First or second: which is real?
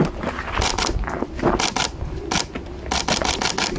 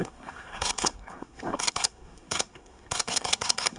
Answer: first